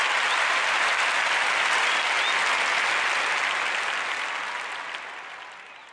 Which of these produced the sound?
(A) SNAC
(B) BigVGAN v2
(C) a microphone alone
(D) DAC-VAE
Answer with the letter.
C